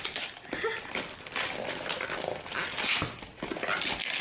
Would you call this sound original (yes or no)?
yes